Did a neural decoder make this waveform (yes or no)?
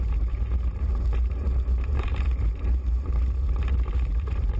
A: yes